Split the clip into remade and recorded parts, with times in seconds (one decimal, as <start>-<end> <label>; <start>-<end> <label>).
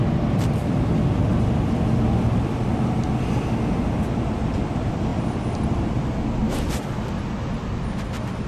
0.0-8.5 recorded